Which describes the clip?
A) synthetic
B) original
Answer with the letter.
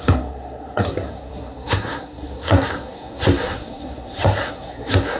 A